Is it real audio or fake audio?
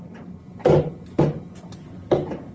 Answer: real